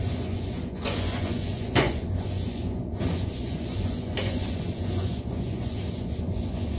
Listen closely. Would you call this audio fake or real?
fake